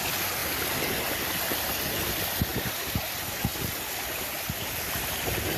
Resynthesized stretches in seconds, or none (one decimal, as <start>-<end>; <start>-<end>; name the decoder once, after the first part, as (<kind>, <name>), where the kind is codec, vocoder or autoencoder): 2.5-3.1 (vocoder, BigVGAN v2)